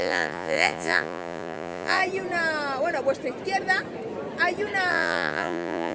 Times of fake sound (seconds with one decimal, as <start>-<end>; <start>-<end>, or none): 0.0-2.0; 4.9-5.9